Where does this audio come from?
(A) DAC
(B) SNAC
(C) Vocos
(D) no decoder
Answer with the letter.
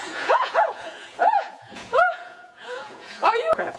C